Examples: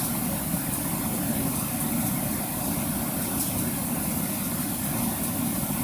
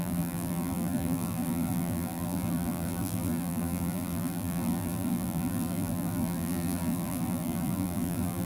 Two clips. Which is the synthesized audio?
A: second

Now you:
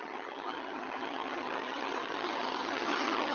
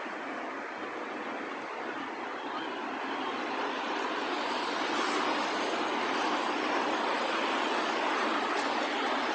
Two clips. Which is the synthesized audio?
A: first